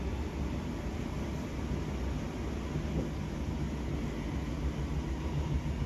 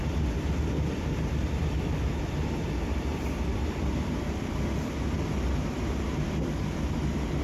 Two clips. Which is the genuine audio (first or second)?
first